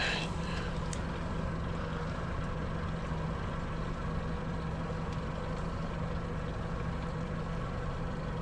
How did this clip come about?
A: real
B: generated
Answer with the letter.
A